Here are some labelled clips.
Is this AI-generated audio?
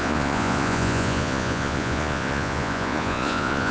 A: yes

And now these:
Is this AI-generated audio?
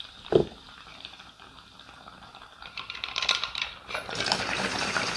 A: yes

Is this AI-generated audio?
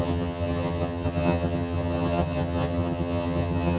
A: yes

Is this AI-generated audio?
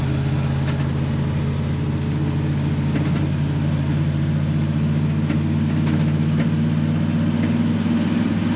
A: no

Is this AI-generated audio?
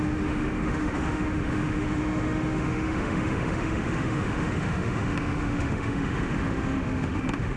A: yes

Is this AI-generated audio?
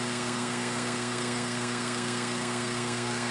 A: yes